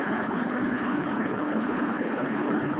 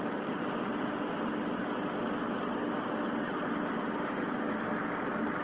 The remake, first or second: first